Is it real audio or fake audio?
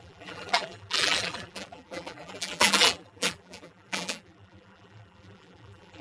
fake